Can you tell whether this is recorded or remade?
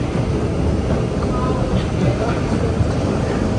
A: recorded